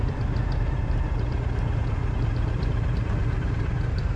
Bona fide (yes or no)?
no